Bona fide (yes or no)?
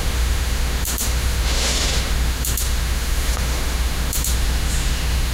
no